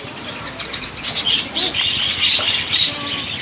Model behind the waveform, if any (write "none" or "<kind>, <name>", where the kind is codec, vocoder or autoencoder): none